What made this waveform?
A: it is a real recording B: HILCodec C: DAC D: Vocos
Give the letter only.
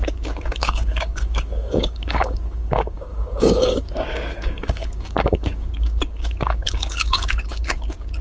C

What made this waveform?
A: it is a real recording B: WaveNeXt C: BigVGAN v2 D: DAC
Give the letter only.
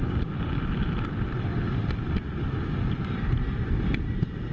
A